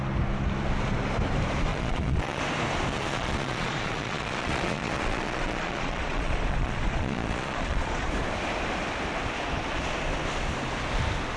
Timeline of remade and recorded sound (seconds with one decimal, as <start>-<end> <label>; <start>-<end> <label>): 0.0-1.7 recorded; 1.7-2.4 remade; 2.4-2.9 recorded; 2.9-8.1 remade; 8.1-11.4 recorded